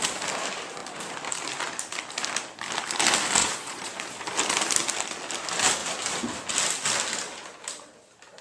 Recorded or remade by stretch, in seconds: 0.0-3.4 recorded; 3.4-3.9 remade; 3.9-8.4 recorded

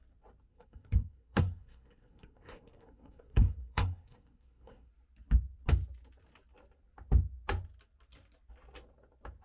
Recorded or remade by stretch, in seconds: 0.0-0.5 recorded; 0.5-4.9 remade; 4.9-9.4 recorded

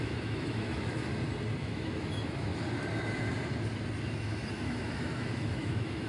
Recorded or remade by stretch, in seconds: 0.0-1.1 remade; 1.1-1.6 recorded; 1.6-2.5 remade; 2.5-4.5 recorded; 4.5-6.1 remade